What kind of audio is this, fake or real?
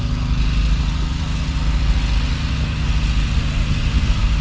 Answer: real